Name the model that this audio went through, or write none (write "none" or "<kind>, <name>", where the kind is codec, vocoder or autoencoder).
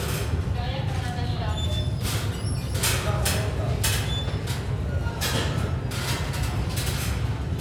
none